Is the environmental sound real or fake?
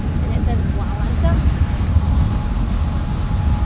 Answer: real